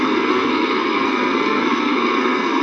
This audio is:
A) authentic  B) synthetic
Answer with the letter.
B